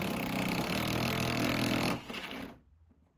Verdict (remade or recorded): remade